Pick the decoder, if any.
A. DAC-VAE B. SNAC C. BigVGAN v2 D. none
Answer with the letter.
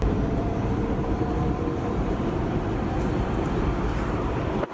C